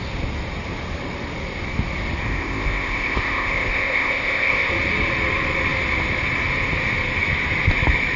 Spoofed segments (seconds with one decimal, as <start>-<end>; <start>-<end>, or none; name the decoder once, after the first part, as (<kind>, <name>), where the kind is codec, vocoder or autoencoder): 2.2-4.7 (codec, ZipCodec)